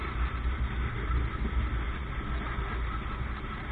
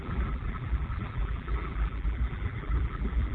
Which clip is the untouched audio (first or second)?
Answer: first